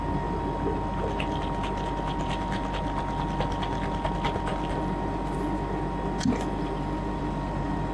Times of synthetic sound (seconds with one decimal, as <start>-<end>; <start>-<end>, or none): none

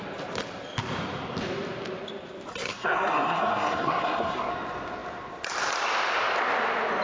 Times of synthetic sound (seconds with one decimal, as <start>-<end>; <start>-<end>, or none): 2.5-4.5

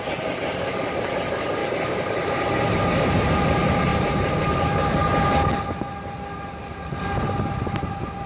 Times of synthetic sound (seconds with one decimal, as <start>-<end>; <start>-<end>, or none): 1.6-3.3

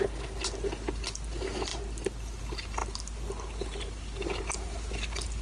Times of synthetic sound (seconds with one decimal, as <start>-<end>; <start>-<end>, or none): none

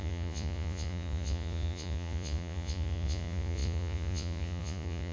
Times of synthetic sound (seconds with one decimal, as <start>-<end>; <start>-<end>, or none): 0.0-5.1

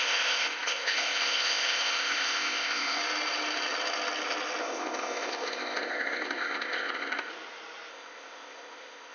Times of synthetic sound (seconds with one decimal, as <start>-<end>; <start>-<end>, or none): 0.0-3.0; 4.6-7.3; 7.9-9.1

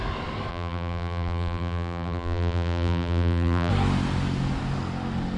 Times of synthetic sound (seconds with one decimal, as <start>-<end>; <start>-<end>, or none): 0.5-3.7